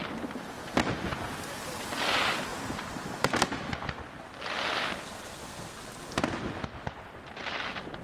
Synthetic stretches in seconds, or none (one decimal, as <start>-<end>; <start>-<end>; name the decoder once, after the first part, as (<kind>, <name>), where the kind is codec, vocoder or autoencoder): 5.0-5.8 (codec, SNAC)